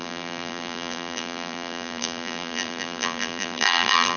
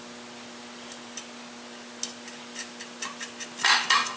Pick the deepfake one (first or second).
first